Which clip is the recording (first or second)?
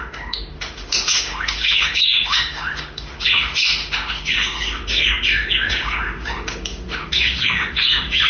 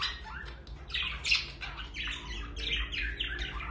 second